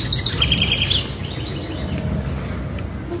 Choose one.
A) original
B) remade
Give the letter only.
A